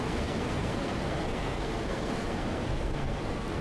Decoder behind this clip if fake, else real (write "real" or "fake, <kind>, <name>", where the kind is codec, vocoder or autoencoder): fake, codec, SNAC